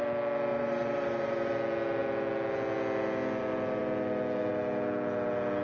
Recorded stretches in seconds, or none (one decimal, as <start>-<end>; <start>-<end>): 0.0-0.5; 1.5-5.6